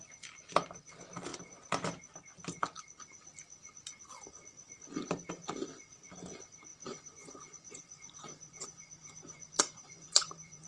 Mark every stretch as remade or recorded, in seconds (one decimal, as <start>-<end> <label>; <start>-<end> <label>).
0.0-6.7 recorded; 6.7-10.7 remade